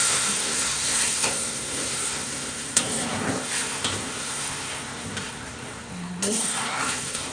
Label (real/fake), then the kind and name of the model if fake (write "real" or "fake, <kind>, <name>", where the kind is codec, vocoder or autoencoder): fake, codec, SNAC